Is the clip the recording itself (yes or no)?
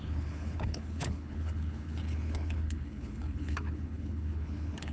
no